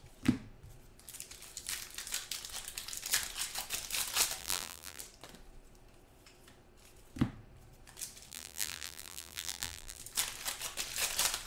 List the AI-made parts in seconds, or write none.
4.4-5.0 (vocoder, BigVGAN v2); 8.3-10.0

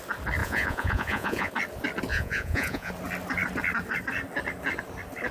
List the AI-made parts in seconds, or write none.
0.4-1.5 (vocoder, Vocos); 2.1-2.9

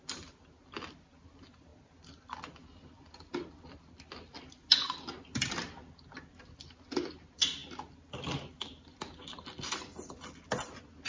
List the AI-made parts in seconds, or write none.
none

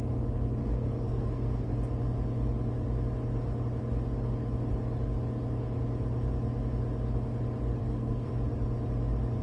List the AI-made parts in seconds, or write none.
0.6-1.7 (codec, SNAC); 7.8-8.3

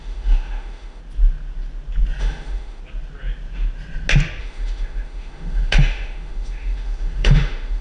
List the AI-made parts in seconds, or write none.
0.0-1.0 (autoencoder, DAC-VAE); 2.2-2.8; 4.4-7.8

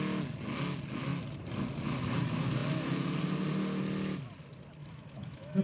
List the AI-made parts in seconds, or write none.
4.8-5.6 (autoencoder, DAC-VAE)

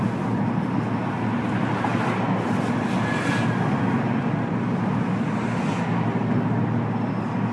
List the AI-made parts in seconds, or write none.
none

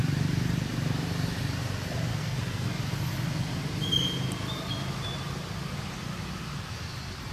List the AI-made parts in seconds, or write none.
2.1-2.8 (codec, SNAC)